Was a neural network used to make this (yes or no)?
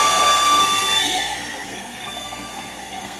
yes